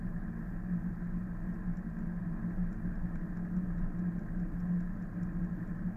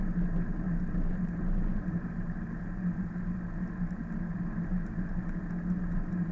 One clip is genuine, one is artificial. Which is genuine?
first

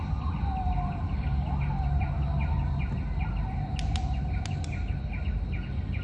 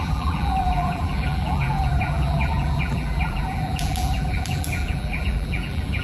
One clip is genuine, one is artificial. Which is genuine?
first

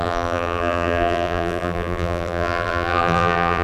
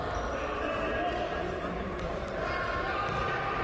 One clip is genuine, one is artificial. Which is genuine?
second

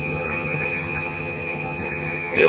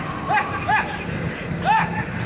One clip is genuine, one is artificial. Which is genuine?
second